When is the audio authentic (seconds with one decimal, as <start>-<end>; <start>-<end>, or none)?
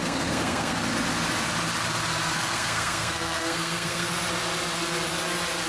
0.8-2.1; 4.1-5.7